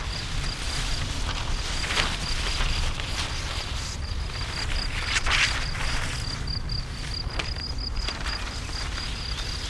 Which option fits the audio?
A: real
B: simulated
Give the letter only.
A